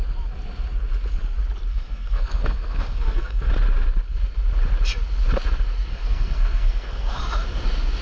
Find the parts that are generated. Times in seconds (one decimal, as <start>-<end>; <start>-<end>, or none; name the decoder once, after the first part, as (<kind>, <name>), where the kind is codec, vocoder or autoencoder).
1.7-3.5 (codec, SNAC); 5.9-7.2